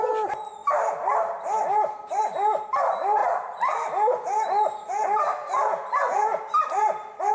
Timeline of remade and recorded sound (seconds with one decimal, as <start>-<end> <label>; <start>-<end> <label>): 0.0-0.6 recorded; 0.6-2.2 remade; 2.2-3.2 recorded; 3.2-3.9 remade; 3.9-7.3 recorded

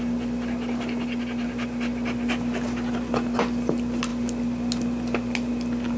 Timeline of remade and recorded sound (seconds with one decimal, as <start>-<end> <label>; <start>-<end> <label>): 0.0-6.0 recorded

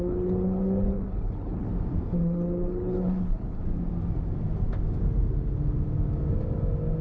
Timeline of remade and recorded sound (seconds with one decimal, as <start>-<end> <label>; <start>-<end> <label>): 0.0-1.7 remade; 1.7-2.2 recorded; 2.2-3.6 remade; 3.6-7.0 recorded

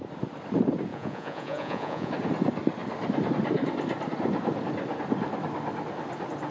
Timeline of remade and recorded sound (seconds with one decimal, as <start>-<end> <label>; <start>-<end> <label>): 0.0-0.9 recorded; 0.9-2.1 remade; 2.1-6.5 recorded